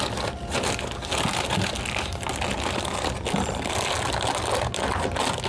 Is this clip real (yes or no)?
yes